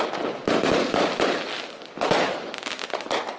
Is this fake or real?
real